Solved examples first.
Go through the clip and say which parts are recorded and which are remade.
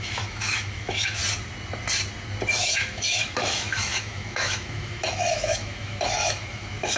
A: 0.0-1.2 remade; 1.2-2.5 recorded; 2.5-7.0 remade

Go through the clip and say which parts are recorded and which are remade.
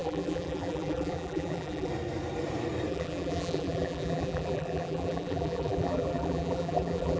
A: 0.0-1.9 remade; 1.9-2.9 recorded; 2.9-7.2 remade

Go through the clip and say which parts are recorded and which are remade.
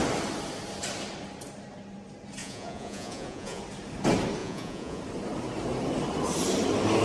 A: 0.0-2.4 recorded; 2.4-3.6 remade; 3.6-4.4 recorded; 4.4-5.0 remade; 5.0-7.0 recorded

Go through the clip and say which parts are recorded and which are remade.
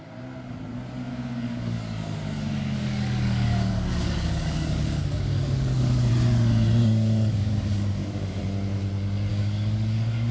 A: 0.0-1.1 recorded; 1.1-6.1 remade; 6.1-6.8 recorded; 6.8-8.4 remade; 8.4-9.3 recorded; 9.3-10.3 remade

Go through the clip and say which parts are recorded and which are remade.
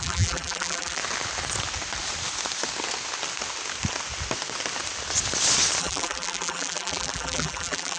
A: 0.0-1.0 remade; 1.0-5.8 recorded; 5.8-8.0 remade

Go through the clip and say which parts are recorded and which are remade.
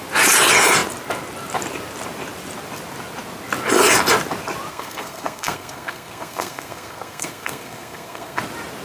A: 0.0-4.7 recorded; 4.7-8.4 remade; 8.4-8.8 recorded